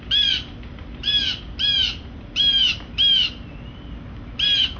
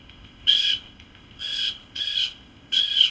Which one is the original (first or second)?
first